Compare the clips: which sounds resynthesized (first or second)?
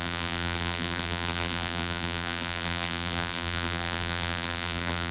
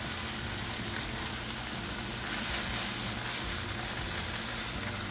first